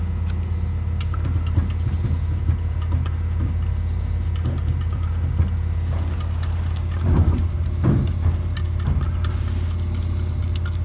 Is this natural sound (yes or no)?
yes